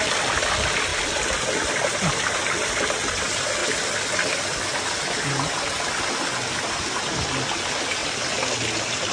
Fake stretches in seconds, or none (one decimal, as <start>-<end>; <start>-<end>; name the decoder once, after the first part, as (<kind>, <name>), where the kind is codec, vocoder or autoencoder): 0.9-2.4 (vocoder, BigVGAN v2)